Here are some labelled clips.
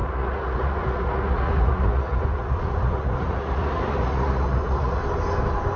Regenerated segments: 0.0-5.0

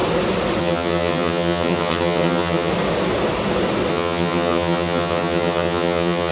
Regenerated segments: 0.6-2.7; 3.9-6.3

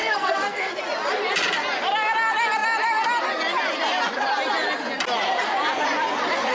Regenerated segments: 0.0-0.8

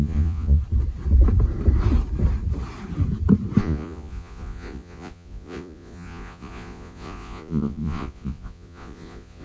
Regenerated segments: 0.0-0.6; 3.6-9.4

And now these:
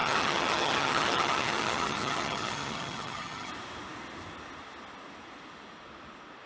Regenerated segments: 0.0-3.5

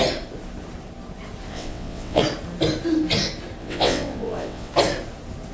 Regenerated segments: 1.5-2.2; 3.6-4.7

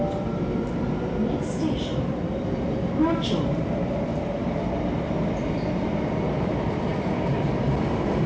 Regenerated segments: 0.0-8.3